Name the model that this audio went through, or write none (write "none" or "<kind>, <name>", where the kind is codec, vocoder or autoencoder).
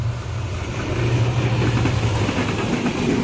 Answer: none